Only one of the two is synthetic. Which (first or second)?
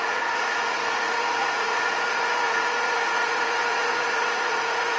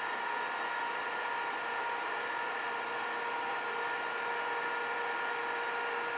first